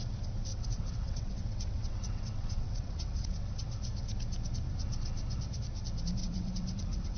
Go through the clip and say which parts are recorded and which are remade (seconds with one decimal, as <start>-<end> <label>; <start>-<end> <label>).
0.0-0.5 recorded; 0.5-3.5 remade; 3.5-6.2 recorded; 6.2-7.2 remade